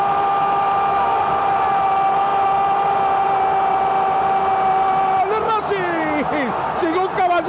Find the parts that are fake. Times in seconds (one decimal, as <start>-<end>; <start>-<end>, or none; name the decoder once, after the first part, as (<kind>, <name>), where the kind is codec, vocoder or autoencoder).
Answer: none